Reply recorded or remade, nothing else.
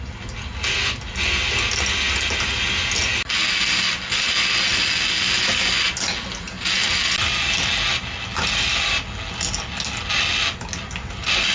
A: recorded